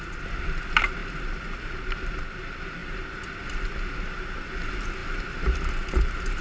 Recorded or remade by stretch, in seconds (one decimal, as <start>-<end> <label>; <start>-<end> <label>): 0.0-6.4 remade